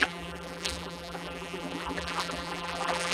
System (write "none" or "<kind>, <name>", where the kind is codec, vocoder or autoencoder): vocoder, BigVGAN v2